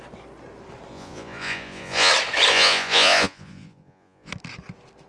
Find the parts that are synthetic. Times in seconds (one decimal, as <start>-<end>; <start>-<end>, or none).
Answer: 0.9-2.1; 2.5-4.3